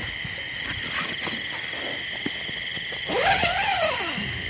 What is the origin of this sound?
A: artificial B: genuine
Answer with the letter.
B